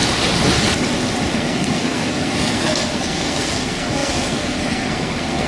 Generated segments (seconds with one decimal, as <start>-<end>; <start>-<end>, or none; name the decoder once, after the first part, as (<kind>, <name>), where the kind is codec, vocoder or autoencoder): 1.3-5.5 (codec, SNAC)